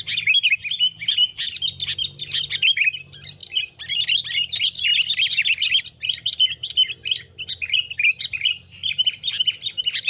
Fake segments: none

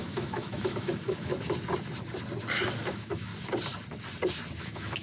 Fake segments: 0.0-1.3 (autoencoder, DAC-VAE); 2.9-3.3; 4.6-5.0

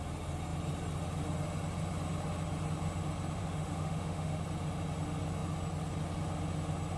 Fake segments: 3.4-4.4 (autoencoder, DAC-VAE)

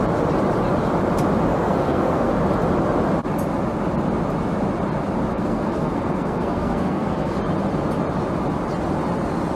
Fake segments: 1.5-2.3 (codec, SNAC); 5.3-7.4

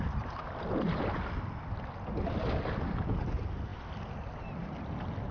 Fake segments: none

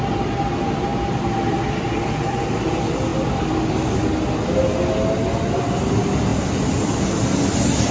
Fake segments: 6.3-6.9 (vocoder, BigVGAN v2)

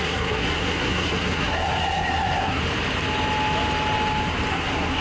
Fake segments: 0.0-2.6 (codec, SNAC); 4.5-5.0